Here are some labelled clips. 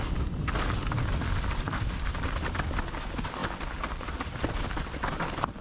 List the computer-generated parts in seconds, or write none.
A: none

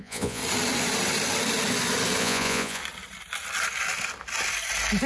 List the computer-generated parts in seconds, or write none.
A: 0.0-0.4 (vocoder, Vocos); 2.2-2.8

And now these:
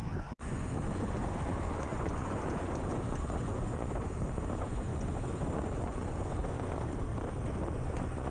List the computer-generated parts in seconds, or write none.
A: 0.0-7.1 (vocoder, Vocos); 7.7-8.3

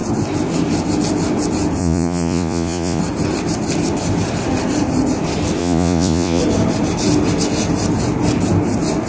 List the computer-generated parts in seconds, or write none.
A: 1.8-3.0 (vocoder, Vocos); 5.6-6.4

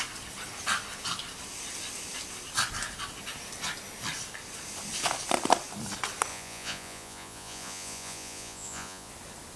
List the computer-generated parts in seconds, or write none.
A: 6.3-9.1 (vocoder, Vocos)